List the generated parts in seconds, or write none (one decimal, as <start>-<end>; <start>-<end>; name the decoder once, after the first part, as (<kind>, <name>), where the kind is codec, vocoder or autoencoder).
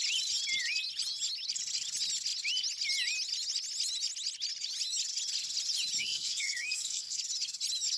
6.0-7.2 (codec, SNAC)